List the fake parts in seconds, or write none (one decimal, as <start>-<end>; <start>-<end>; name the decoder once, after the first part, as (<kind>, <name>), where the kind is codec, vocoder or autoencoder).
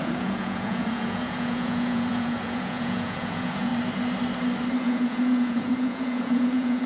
0.0-3.7 (vocoder, Vocos); 4.8-6.9